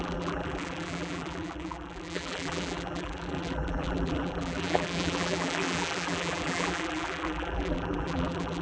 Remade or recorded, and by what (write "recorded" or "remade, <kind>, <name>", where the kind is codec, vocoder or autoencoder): remade, vocoder, BigVGAN v2